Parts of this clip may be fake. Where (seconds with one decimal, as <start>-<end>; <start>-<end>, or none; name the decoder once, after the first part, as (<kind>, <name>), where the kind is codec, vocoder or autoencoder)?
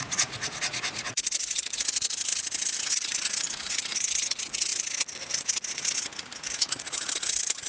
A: 0.0-2.3 (vocoder, Vocos); 2.8-4.7; 5.3-7.7